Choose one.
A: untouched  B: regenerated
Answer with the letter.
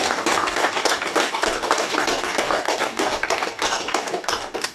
B